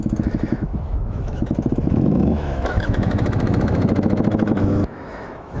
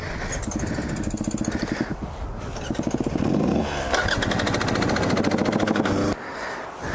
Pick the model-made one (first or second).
first